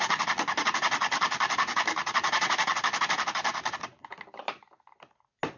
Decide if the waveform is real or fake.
real